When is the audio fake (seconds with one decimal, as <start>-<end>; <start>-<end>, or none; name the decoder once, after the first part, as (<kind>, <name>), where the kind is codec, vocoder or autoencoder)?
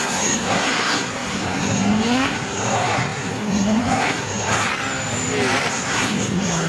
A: 0.0-4.7 (codec, SNAC); 5.7-6.7